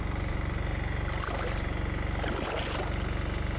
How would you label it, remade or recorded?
recorded